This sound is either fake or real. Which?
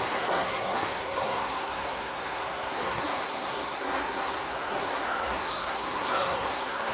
fake